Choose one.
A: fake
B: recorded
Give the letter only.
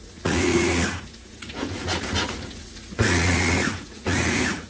A